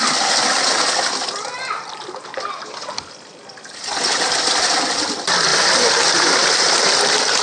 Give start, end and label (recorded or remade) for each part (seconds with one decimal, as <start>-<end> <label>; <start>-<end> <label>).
0.0-5.5 remade; 5.5-7.0 recorded; 7.0-7.4 remade